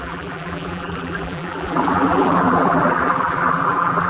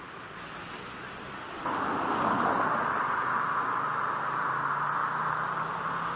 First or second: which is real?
second